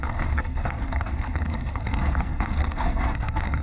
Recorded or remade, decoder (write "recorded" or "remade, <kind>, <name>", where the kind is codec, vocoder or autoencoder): remade, codec, SNAC